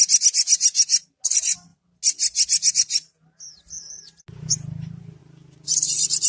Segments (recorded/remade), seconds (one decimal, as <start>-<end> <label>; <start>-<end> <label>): 0.0-5.2 recorded; 5.2-6.3 remade